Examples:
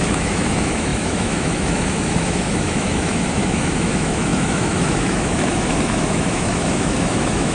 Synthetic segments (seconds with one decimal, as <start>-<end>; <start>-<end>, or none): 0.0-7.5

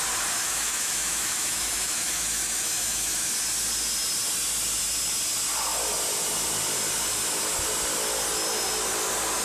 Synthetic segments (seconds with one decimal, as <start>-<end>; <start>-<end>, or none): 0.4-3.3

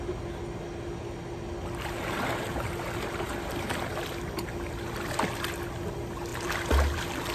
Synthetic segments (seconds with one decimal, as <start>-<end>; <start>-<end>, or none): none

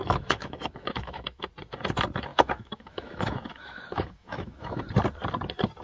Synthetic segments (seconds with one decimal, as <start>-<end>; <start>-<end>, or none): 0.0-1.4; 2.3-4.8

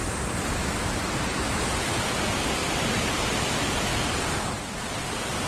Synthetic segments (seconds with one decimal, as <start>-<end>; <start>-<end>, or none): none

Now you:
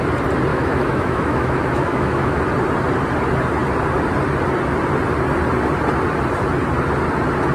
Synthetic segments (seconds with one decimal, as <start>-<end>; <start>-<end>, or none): 0.5-2.4

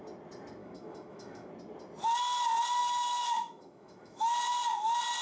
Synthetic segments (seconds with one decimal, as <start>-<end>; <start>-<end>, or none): 0.6-1.5; 2.8-4.3